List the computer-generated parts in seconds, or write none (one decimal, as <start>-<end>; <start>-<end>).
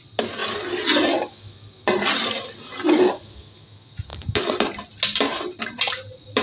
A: none